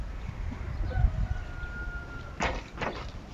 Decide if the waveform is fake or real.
real